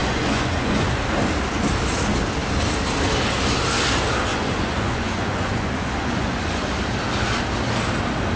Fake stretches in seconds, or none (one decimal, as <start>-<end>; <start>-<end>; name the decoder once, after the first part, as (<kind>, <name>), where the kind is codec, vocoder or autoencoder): 0.0-1.0 (vocoder, Vocos); 4.3-6.6